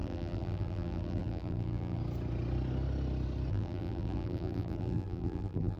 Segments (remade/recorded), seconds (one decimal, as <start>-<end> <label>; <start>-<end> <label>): 0.0-2.0 remade; 2.0-3.5 recorded; 3.5-5.8 remade